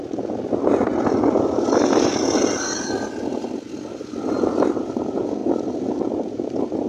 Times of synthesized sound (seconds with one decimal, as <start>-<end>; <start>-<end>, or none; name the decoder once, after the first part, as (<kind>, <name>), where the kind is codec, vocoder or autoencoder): none